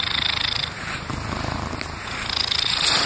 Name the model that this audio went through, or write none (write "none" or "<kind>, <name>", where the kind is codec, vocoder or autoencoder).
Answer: none